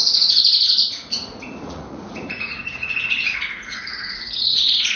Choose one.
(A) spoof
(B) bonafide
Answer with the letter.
A